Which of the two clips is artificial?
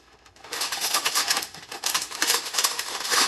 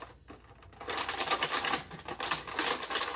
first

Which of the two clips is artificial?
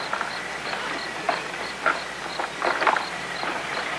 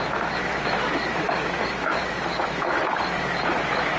second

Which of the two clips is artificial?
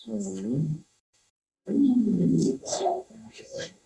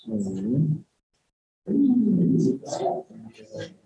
first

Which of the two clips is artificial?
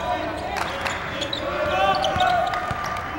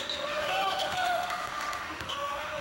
second